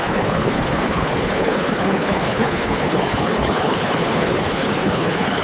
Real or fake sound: fake